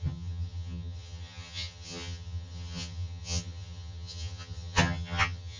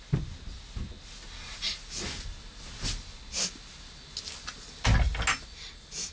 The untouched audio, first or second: second